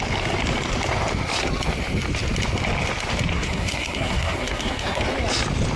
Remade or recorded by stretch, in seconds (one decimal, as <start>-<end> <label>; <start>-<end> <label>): 0.0-3.3 recorded; 3.3-5.0 remade; 5.0-5.8 recorded